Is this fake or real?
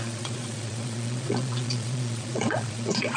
fake